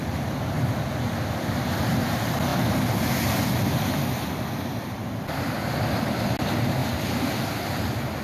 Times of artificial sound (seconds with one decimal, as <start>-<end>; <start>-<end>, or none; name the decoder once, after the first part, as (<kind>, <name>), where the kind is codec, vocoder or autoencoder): none